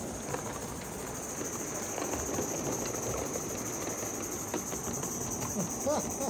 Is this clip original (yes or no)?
yes